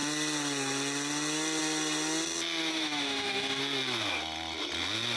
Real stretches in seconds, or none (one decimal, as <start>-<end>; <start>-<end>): 0.0-2.7; 3.6-5.2